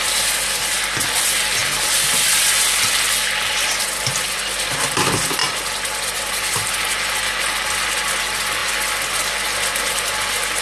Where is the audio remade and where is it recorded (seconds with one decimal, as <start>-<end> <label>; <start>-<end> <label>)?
0.0-5.4 recorded; 5.4-6.7 remade; 6.7-10.6 recorded